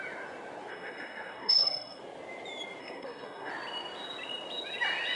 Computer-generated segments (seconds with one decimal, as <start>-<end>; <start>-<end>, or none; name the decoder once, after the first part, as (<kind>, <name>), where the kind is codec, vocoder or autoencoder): 0.7-2.0 (codec, SNAC); 2.8-3.5